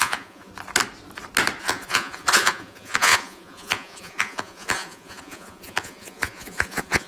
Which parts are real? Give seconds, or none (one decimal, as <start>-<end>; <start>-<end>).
0.5-1.6